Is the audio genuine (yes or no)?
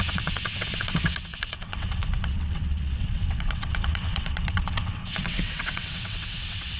no